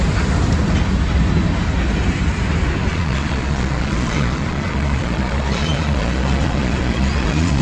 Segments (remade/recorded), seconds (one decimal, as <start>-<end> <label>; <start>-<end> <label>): 0.0-2.9 recorded; 2.9-7.6 remade